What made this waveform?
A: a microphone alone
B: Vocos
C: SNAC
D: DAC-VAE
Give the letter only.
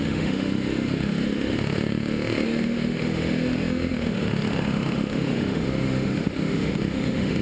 D